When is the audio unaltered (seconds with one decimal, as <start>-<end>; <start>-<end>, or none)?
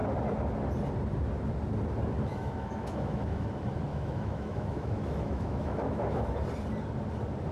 0.0-2.3; 3.5-3.9; 6.4-7.5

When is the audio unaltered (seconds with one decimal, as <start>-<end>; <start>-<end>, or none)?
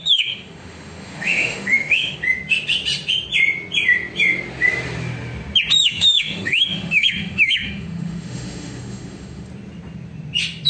2.2-5.8; 9.5-10.7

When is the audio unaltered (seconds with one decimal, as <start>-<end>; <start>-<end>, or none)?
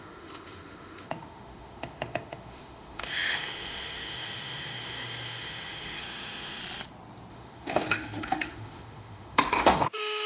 6.6-7.3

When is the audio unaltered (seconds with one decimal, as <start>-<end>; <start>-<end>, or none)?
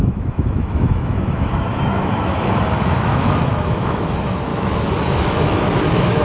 none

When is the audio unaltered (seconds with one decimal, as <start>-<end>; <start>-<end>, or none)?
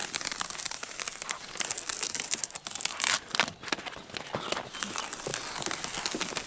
0.0-6.5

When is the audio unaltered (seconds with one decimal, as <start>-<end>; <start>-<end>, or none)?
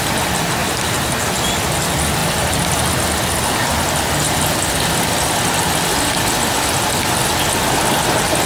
0.0-8.5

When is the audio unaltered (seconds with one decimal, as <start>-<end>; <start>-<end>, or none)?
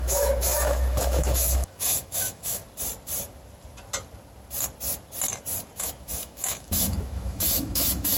2.6-5.8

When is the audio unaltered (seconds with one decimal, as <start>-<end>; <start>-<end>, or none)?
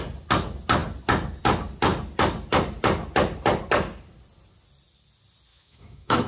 0.0-5.5